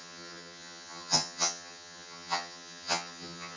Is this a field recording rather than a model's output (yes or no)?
no